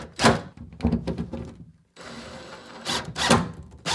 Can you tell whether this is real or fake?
real